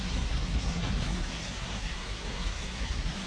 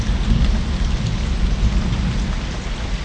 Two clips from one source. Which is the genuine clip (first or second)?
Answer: second